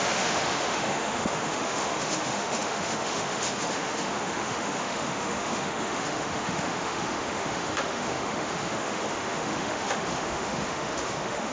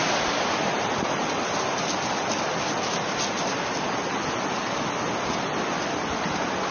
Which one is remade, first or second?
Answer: first